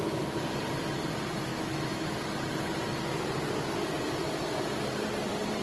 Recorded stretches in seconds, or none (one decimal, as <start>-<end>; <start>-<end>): 0.0-1.5; 2.2-5.6